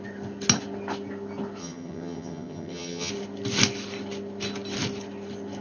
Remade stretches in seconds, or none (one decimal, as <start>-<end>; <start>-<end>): 1.6-3.1